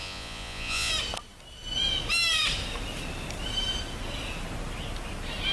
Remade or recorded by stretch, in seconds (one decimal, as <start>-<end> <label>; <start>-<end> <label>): 0.0-0.9 remade; 0.9-5.5 recorded